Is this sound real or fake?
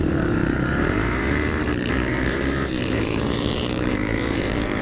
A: fake